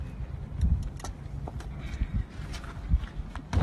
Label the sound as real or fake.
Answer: real